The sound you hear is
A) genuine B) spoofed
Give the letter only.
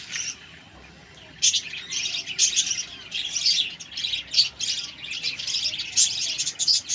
A